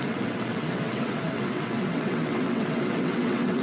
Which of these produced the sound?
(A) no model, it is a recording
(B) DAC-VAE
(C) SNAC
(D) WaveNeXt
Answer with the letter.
D